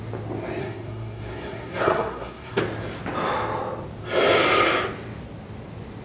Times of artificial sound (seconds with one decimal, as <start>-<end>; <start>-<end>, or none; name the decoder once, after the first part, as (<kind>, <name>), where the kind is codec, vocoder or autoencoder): 0.6-2.6 (codec, SNAC)